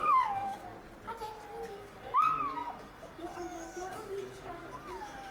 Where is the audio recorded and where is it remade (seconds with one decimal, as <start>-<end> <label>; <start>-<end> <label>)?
0.0-0.7 remade; 0.7-1.7 recorded; 1.7-5.3 remade